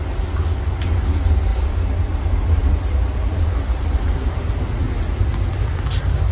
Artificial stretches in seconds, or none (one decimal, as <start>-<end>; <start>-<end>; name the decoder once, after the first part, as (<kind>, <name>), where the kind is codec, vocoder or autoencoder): 2.6-4.5 (vocoder, BigVGAN v2)